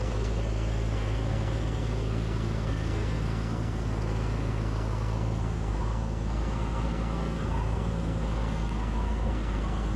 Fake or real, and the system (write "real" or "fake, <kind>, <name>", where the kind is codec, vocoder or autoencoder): fake, codec, SNAC